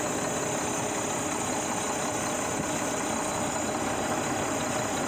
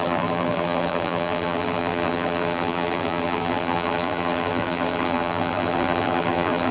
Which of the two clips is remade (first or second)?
second